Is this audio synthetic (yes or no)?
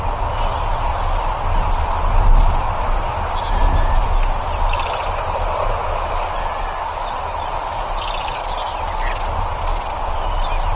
no